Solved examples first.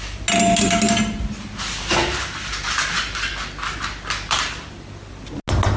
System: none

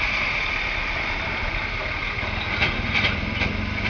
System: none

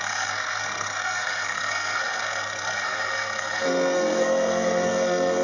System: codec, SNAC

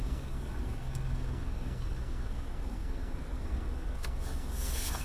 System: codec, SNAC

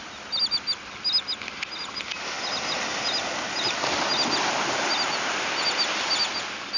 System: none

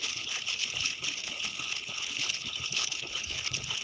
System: codec, HILCodec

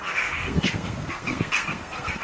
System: codec, SNAC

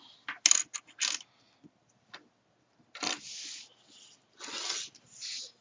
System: none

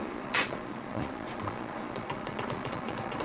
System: vocoder, Vocos